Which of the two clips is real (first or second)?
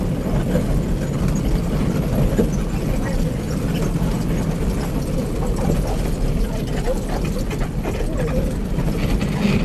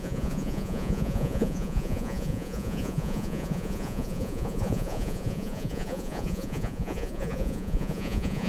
first